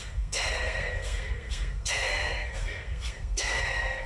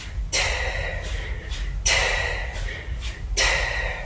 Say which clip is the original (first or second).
second